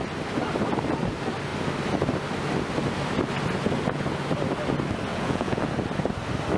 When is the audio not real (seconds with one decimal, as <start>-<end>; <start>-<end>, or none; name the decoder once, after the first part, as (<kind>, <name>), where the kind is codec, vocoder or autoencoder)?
5.1-5.6 (vocoder, Vocos)